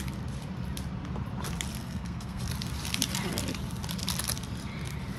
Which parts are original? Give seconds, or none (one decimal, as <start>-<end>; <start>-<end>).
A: 0.0-1.8; 2.4-5.2